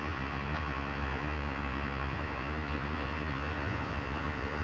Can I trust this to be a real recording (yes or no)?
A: no